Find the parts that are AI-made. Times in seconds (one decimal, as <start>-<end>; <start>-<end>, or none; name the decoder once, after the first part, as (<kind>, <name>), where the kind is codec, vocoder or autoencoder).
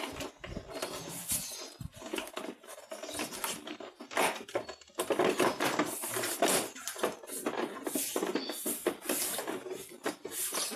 none